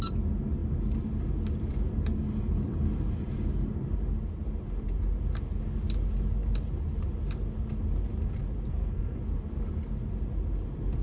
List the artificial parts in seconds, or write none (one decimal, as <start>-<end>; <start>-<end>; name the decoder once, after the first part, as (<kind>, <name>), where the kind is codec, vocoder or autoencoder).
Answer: 8.7-9.2 (codec, SNAC)